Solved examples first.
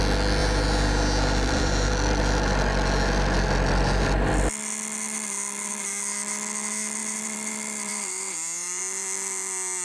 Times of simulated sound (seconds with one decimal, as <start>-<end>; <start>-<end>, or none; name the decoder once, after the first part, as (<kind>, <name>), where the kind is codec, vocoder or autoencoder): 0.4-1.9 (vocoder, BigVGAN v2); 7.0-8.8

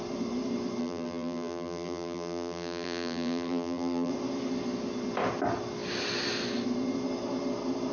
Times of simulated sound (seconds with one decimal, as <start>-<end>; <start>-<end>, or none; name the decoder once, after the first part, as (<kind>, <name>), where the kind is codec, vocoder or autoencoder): 0.8-4.1 (vocoder, BigVGAN v2)

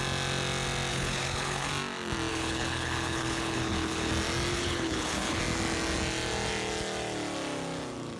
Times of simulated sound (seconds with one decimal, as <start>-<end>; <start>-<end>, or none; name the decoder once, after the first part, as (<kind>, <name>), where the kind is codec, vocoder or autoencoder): 0.9-1.7 (codec, HILCodec); 2.3-4.1; 4.5-5.4